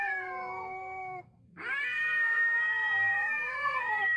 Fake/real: fake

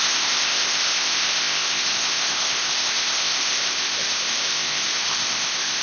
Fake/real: fake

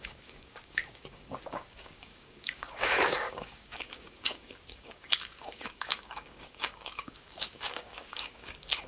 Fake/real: fake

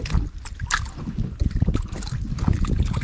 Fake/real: real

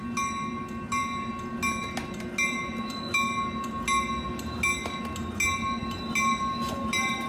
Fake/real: real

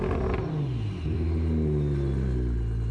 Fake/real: real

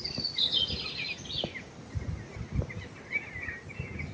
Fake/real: real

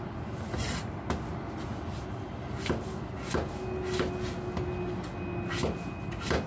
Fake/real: real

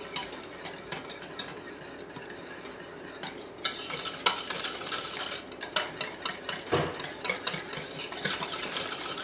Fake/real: real